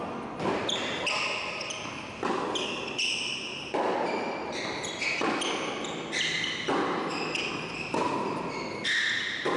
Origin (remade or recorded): recorded